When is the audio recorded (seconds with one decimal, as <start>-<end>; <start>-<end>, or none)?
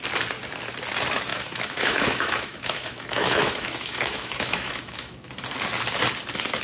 0.0-1.3; 5.3-6.6